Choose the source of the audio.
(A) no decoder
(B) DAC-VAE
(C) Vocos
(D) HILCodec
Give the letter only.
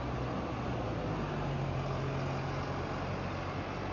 A